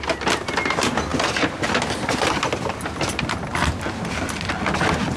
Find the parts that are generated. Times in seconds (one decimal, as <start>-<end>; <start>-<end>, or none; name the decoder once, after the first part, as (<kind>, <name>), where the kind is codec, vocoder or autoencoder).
none